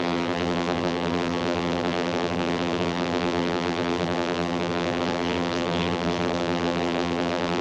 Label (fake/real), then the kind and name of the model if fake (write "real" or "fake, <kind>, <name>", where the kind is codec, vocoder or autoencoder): fake, vocoder, BigVGAN v2